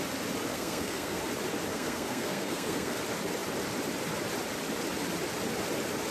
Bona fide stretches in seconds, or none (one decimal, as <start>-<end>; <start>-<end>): 0.0-0.5; 1.2-1.7; 3.0-6.1